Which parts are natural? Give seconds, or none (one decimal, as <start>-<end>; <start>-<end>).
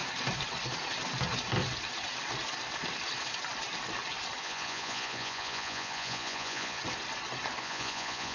0.0-4.4; 6.8-7.6